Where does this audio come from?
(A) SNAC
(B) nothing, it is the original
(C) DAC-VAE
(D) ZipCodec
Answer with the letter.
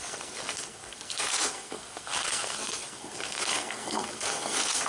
A